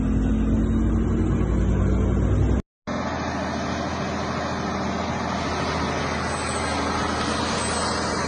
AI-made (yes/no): no